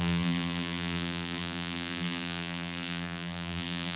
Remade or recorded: remade